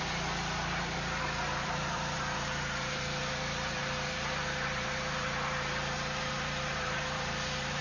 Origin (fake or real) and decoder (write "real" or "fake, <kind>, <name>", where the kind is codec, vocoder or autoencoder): fake, vocoder, BigVGAN v2